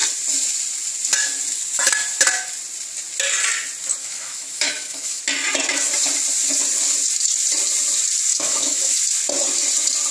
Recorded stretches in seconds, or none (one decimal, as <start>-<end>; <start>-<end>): 0.0-4.0; 5.2-8.3; 9.0-10.1

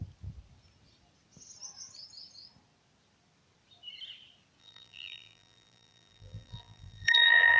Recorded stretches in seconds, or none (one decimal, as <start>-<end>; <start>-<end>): 0.0-4.6

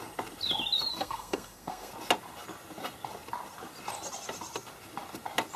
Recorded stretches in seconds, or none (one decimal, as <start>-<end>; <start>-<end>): 0.0-0.9; 1.9-5.6

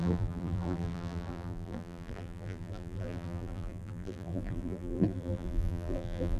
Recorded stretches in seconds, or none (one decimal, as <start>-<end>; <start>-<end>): none